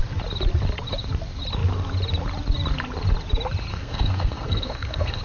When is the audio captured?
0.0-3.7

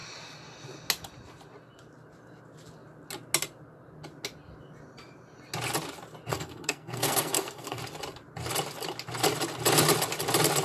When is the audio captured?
0.0-6.3; 7.8-10.6

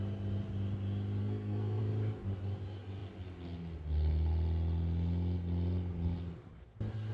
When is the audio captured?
0.0-1.2; 1.8-7.1

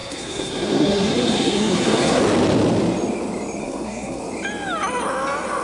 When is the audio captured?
2.2-3.6; 4.2-5.6

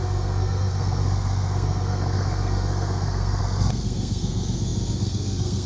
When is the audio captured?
none

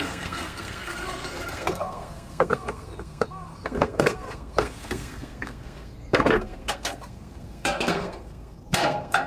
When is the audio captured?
none